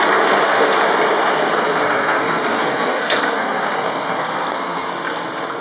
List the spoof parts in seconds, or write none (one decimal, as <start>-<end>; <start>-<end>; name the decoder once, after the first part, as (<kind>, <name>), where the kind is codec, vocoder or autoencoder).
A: 1.5-4.9 (codec, SNAC)